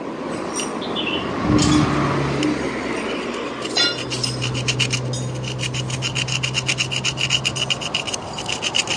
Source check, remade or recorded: recorded